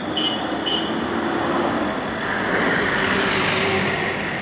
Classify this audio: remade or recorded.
recorded